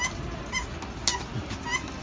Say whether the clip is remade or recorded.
recorded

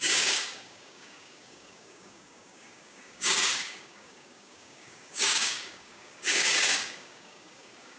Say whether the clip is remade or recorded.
remade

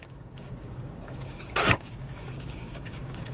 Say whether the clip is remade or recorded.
remade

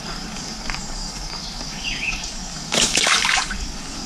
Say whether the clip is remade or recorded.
remade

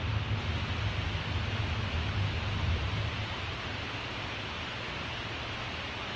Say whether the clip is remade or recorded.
recorded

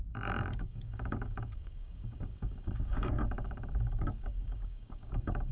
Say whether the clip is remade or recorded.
remade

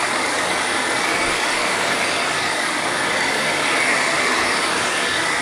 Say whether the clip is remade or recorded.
remade